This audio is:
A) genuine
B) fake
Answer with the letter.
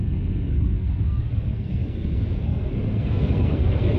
B